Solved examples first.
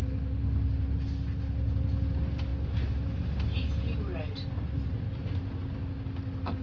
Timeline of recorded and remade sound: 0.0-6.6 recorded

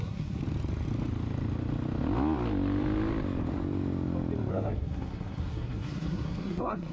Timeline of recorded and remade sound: 0.0-0.4 remade; 0.4-4.5 recorded; 4.5-6.9 remade

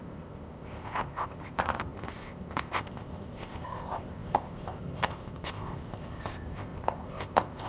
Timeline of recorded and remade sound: 0.0-7.7 remade

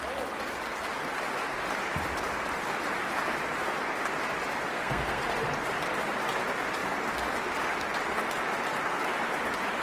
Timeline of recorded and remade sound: 0.0-4.7 recorded; 4.7-5.2 remade; 5.2-9.8 recorded

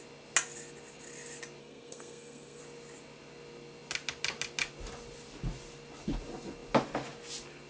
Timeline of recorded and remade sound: 0.0-1.6 recorded; 1.6-2.6 remade; 2.6-7.7 recorded